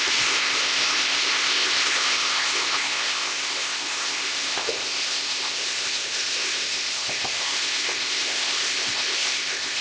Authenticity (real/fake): fake